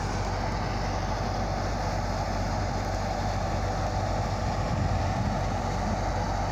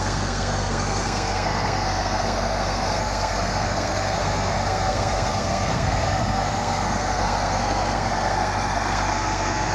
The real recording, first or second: first